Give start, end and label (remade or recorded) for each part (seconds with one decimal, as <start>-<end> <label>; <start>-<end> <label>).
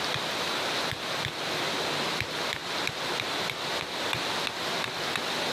0.0-5.5 recorded